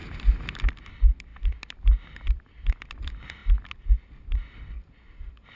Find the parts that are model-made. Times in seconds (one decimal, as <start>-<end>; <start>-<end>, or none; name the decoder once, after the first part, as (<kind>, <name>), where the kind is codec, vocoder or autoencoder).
none